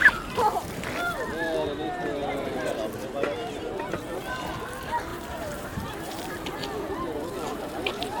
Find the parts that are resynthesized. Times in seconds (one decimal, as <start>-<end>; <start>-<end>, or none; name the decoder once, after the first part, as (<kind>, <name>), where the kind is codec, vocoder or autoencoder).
5.1-6.2 (vocoder, BigVGAN v2); 7.5-8.2